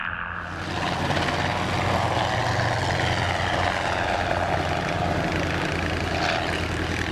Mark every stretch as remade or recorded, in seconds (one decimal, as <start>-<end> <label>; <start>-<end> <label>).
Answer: 0.0-7.1 recorded

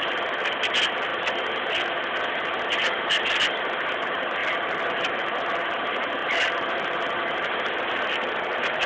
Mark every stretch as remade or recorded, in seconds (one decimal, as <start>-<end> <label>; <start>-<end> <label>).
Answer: 0.0-4.4 recorded; 4.4-5.4 remade; 5.4-8.9 recorded

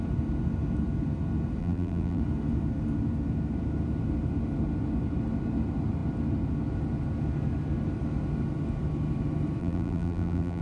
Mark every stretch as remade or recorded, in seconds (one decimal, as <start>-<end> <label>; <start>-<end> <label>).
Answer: 0.0-1.6 recorded; 1.6-2.2 remade; 2.2-9.6 recorded; 9.6-10.6 remade

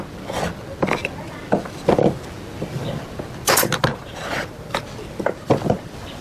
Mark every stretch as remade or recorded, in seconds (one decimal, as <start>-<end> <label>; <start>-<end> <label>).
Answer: 0.0-3.9 recorded; 3.9-4.8 remade; 4.8-6.2 recorded

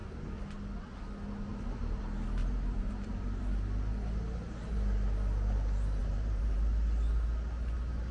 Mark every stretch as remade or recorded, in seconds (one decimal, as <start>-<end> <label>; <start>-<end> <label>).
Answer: 0.0-1.5 recorded; 1.5-2.0 remade; 2.0-2.4 recorded; 2.4-3.4 remade; 3.4-6.0 recorded; 6.0-6.7 remade; 6.7-8.1 recorded